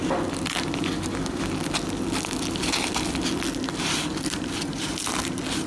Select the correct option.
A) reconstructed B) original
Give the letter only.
B